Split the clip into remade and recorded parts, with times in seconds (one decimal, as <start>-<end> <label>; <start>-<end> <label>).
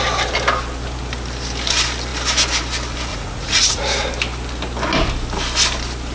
0.0-3.1 recorded; 3.1-3.8 remade; 3.8-6.1 recorded